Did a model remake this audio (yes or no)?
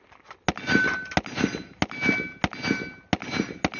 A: no